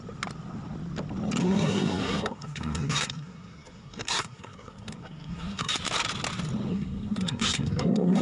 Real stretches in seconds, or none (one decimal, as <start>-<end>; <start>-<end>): 0.0-1.4; 5.7-6.7